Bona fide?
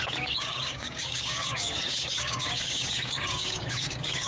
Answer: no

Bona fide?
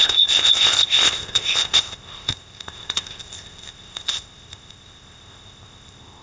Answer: no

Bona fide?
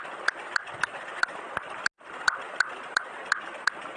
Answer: yes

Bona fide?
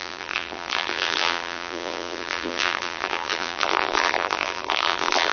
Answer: no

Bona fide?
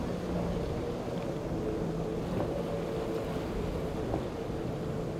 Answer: yes